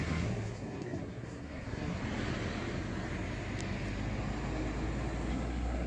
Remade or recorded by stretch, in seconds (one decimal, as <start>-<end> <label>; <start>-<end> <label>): 0.0-2.0 remade; 2.0-5.3 recorded; 5.3-5.9 remade